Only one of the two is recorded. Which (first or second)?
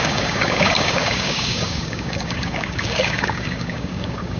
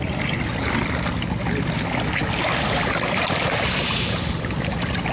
second